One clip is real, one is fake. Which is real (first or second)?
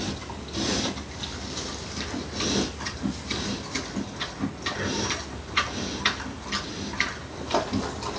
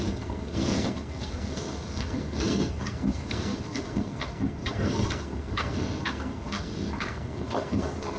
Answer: first